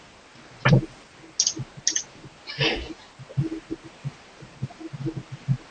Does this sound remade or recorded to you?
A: recorded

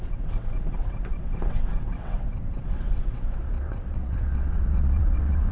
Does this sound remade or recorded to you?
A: remade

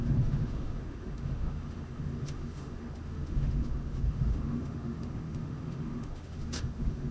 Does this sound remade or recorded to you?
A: remade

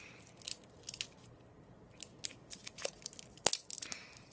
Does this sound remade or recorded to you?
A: recorded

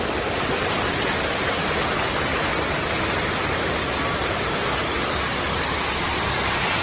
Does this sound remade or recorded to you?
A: recorded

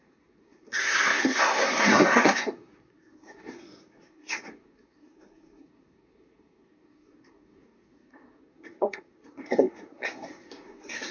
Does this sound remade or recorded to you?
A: remade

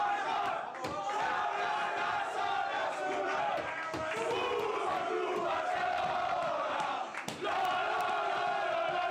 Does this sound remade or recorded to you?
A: recorded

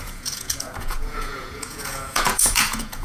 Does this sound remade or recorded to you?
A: remade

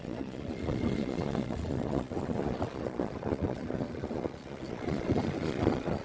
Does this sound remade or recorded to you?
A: remade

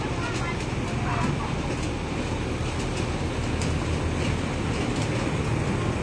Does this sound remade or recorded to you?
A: recorded